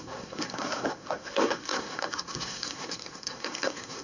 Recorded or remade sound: remade